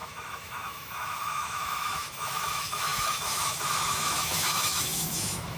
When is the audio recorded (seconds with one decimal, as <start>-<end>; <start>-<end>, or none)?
none